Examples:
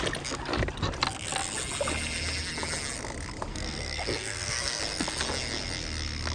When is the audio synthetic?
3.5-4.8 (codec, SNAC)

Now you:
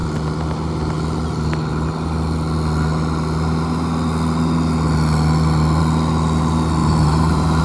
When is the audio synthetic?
6.8-7.6 (vocoder, BigVGAN v2)

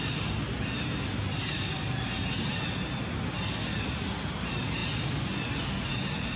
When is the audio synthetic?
none

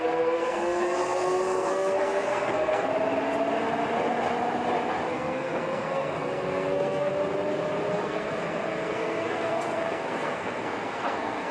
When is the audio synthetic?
0.0-2.9 (codec, SNAC); 5.1-7.1; 7.9-11.5

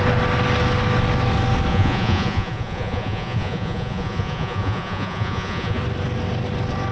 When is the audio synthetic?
1.7-5.8 (vocoder, Vocos)

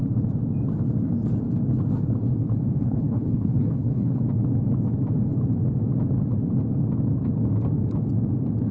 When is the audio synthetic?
2.8-4.2 (codec, HILCodec)